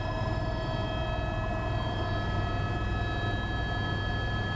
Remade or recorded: recorded